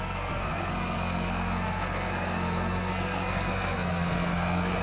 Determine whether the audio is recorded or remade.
remade